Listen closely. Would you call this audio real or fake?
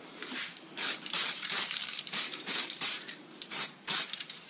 fake